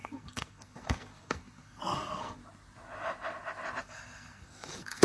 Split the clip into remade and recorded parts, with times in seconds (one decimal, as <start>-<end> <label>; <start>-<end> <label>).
0.0-2.4 remade; 2.4-3.8 recorded; 3.8-5.0 remade